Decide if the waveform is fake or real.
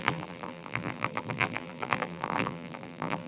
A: fake